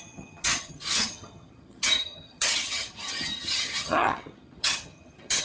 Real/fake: fake